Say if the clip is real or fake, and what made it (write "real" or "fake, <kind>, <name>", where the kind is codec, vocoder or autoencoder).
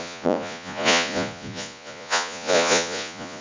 fake, vocoder, Vocos